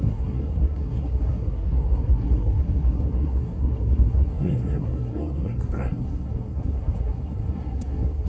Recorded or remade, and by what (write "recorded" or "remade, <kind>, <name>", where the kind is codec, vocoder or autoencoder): remade, codec, SNAC